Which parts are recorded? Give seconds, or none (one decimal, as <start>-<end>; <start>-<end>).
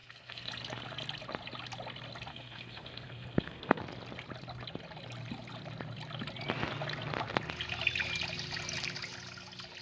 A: 0.5-2.3; 3.8-9.8